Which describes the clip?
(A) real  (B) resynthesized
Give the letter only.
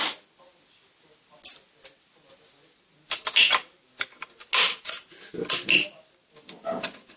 A